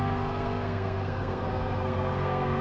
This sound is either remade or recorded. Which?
remade